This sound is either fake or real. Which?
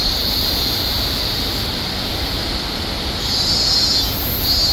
real